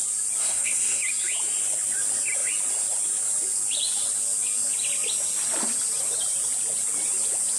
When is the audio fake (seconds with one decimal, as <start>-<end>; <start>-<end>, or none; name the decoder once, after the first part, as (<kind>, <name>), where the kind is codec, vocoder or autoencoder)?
0.4-1.0 (codec, SNAC)